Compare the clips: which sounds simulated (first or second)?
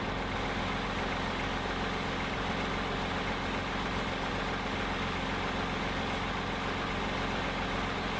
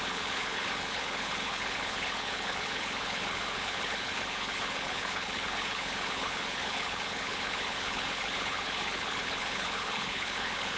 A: second